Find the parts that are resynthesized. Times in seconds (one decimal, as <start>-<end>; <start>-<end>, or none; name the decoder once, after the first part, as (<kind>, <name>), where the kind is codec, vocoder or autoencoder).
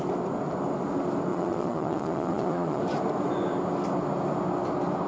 1.3-2.8 (vocoder, Vocos)